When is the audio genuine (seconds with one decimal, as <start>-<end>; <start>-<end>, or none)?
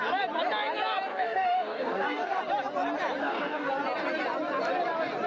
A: 0.0-1.1; 2.4-3.2; 3.7-5.3